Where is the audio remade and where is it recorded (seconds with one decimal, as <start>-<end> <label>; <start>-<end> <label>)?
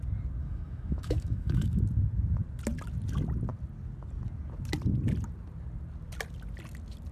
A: 0.0-0.4 recorded; 0.4-1.8 remade; 1.8-7.1 recorded